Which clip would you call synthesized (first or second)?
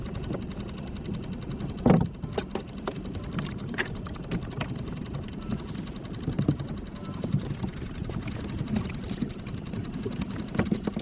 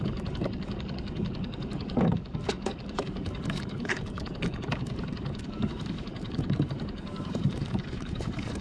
second